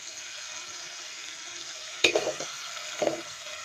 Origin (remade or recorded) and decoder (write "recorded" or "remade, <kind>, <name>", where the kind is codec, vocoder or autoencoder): remade, codec, SNAC